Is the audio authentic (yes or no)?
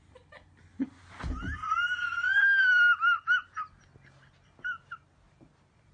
yes